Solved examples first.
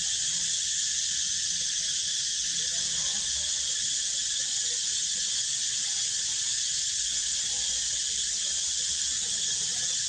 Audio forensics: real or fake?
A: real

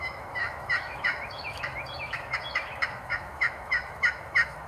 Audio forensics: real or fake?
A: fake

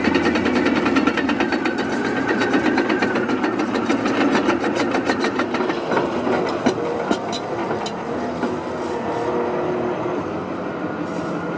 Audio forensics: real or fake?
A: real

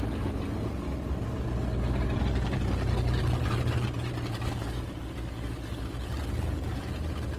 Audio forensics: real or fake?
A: real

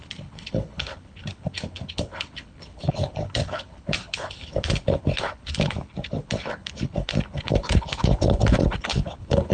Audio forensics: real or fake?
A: fake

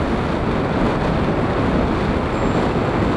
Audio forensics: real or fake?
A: real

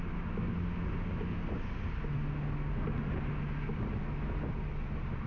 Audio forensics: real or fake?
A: real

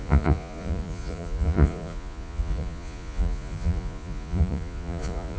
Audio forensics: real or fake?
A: fake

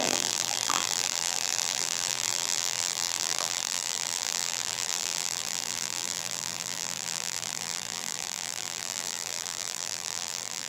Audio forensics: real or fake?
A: fake